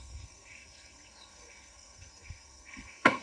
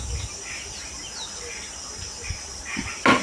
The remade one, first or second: first